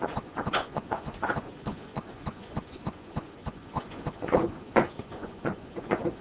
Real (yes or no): no